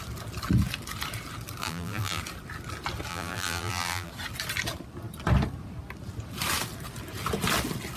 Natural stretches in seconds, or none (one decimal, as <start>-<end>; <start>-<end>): 0.0-1.6; 2.2-3.1; 4.1-8.0